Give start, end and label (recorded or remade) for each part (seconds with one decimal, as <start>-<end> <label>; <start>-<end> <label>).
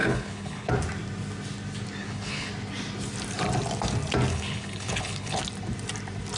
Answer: 0.0-0.7 remade; 0.7-2.0 recorded; 2.0-2.5 remade; 2.5-4.3 recorded; 4.3-5.4 remade; 5.4-6.4 recorded